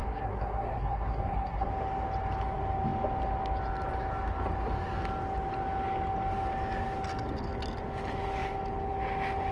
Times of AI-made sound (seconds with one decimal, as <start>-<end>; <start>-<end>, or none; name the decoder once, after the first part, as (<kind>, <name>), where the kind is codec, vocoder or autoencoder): 0.0-1.7 (codec, SNAC)